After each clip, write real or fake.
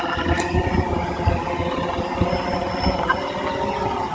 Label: real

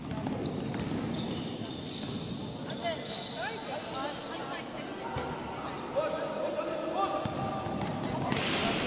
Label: real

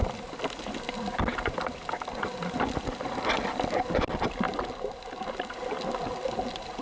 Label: real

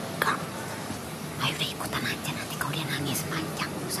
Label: real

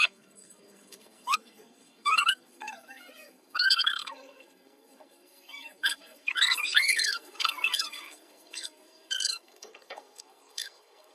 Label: fake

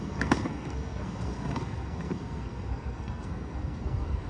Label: fake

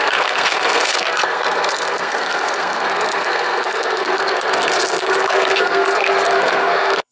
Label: fake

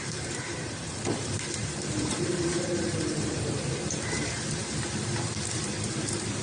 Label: fake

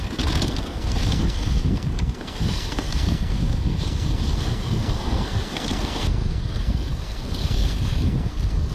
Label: fake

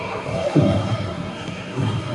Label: fake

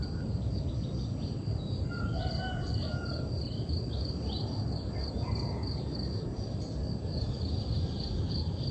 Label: real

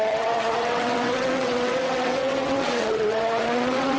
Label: fake